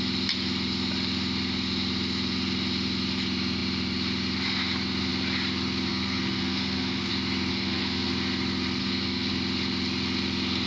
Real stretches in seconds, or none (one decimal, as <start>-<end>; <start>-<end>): 0.0-5.9; 7.1-7.5; 8.1-8.8; 9.3-10.7